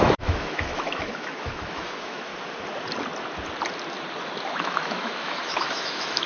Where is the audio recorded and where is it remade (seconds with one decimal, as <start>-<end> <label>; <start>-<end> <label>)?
0.0-2.3 remade; 2.3-4.5 recorded; 4.5-6.3 remade